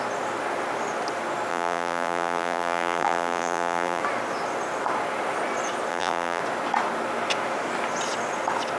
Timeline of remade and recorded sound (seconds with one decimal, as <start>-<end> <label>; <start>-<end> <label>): 0.0-1.5 recorded; 1.5-4.0 remade; 4.0-5.9 recorded; 5.9-6.4 remade; 6.4-8.8 recorded